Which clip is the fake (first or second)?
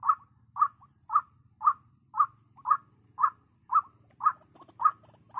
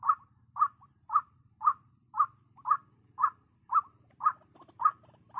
second